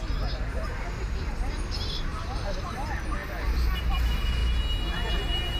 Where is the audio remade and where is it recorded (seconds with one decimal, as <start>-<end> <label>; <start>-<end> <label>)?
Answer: 0.0-5.6 recorded